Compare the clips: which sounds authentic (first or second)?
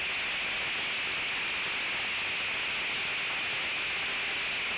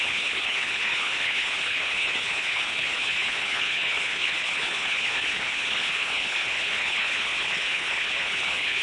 first